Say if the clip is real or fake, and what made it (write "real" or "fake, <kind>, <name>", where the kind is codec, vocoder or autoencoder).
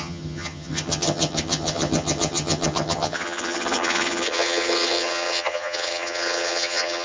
fake, vocoder, HiFi-GAN